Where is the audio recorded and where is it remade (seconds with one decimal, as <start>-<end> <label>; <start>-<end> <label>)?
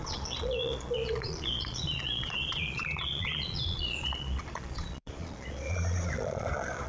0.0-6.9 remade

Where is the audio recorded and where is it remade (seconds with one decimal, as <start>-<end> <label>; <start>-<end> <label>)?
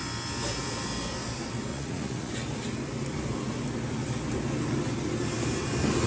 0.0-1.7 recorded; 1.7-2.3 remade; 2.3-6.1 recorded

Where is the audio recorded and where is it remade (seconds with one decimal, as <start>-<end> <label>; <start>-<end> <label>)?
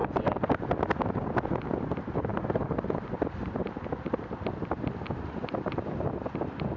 0.0-6.8 recorded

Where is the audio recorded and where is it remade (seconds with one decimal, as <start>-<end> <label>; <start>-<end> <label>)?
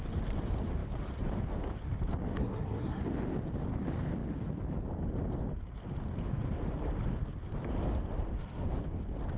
0.0-2.4 recorded; 2.4-3.0 remade; 3.0-9.4 recorded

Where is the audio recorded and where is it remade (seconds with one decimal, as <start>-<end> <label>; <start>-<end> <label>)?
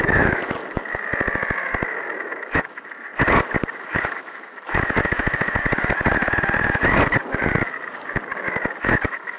0.0-0.6 remade; 0.6-2.4 recorded; 2.4-3.1 remade; 3.1-3.8 recorded; 3.8-5.6 remade; 5.6-8.8 recorded; 8.8-9.4 remade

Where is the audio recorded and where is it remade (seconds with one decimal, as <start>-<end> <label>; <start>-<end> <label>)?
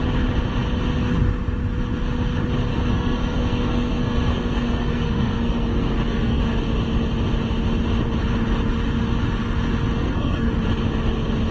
0.0-2.7 recorded; 2.7-6.4 remade; 6.4-10.0 recorded; 10.0-10.5 remade; 10.5-11.5 recorded